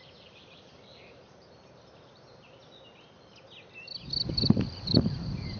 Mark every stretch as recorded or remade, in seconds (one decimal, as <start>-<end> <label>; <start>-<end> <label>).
0.0-2.6 remade; 2.6-4.3 recorded; 4.3-5.6 remade